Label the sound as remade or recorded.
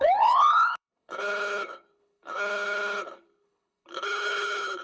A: remade